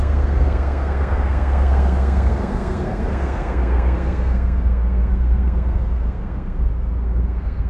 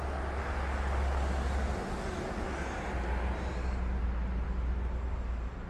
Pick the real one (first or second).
second